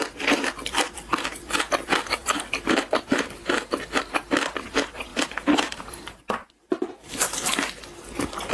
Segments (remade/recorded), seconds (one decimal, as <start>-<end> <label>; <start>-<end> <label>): 0.0-2.2 recorded; 2.2-4.0 remade; 4.0-5.1 recorded; 5.1-7.7 remade; 7.7-8.5 recorded